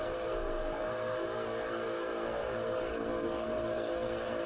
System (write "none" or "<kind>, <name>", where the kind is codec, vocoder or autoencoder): codec, SNAC